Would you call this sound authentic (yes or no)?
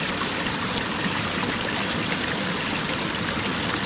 yes